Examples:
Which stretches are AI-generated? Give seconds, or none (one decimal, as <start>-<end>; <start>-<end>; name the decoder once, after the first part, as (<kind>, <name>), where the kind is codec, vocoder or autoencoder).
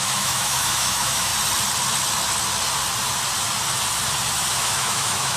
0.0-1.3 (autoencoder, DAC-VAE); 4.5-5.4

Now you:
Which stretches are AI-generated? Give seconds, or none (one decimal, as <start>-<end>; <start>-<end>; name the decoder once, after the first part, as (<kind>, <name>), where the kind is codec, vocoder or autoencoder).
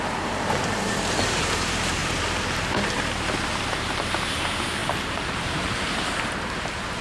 0.0-4.8 (vocoder, BigVGAN v2); 5.3-7.0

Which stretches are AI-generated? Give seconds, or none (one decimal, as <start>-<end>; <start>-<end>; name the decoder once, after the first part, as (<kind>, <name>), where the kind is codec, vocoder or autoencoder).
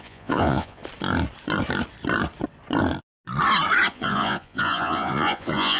0.0-0.8 (vocoder, Vocos); 3.9-5.8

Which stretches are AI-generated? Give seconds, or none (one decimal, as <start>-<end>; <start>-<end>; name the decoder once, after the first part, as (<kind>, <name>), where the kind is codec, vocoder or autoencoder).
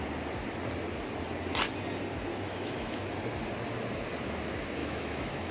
2.3-3.1 (autoencoder, DAC-VAE); 4.8-5.5